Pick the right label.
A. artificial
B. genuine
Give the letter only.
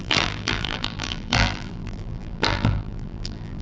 A